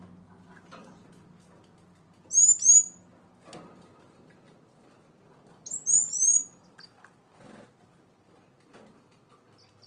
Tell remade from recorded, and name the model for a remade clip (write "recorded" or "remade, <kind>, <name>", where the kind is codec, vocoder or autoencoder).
recorded